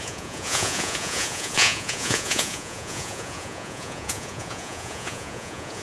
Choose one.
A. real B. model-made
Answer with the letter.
B